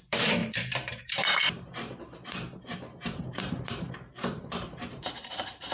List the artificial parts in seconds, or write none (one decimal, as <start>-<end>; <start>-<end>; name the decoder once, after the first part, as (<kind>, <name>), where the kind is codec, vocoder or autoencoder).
0.0-5.7 (vocoder, BigVGAN v2)